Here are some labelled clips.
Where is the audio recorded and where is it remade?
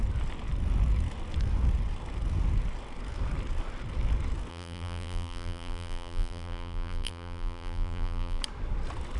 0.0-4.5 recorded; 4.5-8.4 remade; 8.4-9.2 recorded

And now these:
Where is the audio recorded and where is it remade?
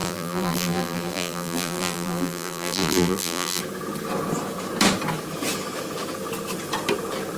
0.0-3.6 remade; 3.6-7.4 recorded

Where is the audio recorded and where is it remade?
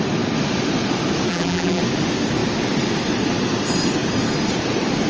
0.0-1.3 recorded; 1.3-1.8 remade; 1.8-5.1 recorded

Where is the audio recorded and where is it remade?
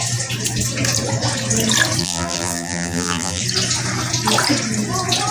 0.0-2.0 recorded; 2.0-3.4 remade; 3.4-5.3 recorded